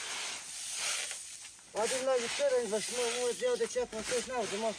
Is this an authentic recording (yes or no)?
yes